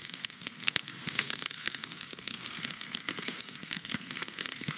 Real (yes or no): no